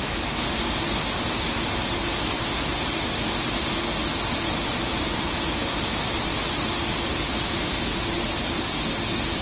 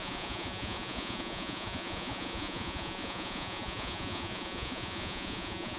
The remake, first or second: second